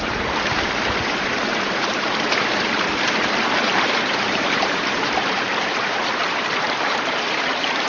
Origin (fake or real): fake